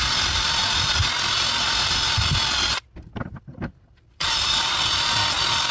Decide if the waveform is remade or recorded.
remade